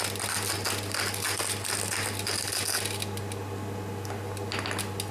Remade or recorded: recorded